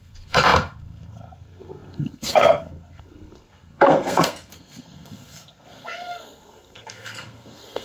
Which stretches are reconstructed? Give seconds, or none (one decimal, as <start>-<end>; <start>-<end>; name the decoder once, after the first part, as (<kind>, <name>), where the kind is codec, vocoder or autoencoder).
0.0-7.8 (codec, SNAC)